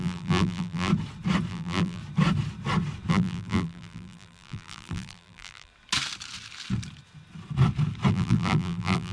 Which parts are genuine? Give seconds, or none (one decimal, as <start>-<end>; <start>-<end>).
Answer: 0.9-1.5; 2.0-3.1; 5.7-8.1